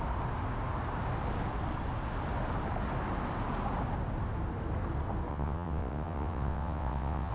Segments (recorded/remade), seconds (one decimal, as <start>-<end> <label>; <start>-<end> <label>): 0.0-5.3 recorded; 5.3-7.3 remade